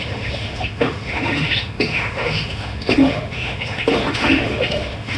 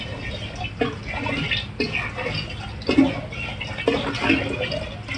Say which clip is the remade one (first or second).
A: first